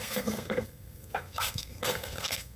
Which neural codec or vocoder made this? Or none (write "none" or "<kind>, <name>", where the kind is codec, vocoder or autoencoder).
codec, SNAC